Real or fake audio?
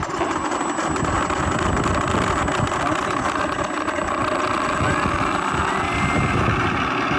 real